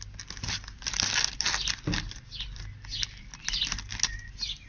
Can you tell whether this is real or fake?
real